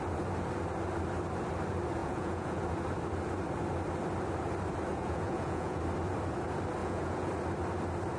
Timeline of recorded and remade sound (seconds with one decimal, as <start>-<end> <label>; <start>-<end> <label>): 0.0-2.0 recorded; 2.0-2.6 remade; 2.6-4.9 recorded; 4.9-5.8 remade; 5.8-6.8 recorded; 6.8-7.3 remade; 7.3-8.2 recorded